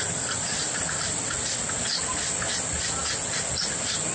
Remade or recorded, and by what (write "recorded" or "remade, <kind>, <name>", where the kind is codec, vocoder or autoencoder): recorded